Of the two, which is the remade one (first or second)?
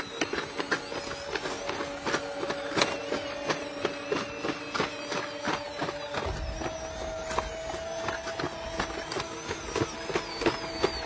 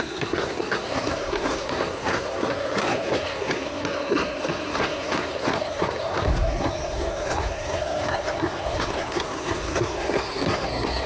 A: second